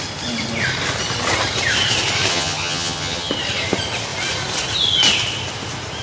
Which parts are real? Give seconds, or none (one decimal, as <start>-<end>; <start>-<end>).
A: 0.0-2.3; 3.3-6.0